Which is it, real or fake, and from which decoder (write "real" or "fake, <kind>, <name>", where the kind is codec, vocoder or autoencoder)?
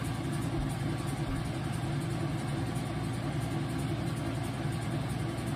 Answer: real